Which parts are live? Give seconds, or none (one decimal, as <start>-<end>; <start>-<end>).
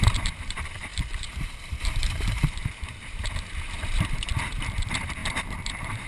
none